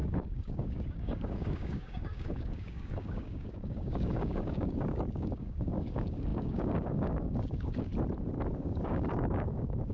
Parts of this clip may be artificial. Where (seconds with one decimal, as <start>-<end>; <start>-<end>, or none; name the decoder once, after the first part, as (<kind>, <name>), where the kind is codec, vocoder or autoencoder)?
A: 0.0-7.9 (codec, DAC); 8.6-9.9